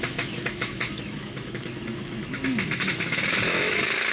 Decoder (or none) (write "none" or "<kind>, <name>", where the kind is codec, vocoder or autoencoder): autoencoder, DAC-VAE